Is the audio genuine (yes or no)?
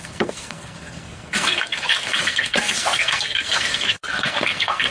no